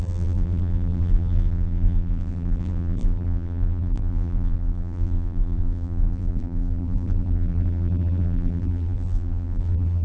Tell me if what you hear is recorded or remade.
remade